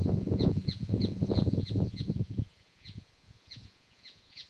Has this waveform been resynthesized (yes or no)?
yes